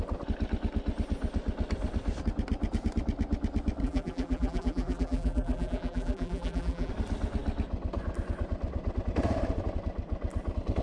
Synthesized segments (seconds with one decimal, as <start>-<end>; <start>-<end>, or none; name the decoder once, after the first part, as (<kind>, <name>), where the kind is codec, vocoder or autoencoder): 3.8-6.9 (vocoder, BigVGAN v2)